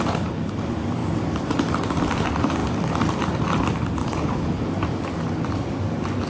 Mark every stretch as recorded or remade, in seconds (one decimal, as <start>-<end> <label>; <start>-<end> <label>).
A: 0.0-4.0 recorded; 4.0-4.6 remade; 4.6-6.3 recorded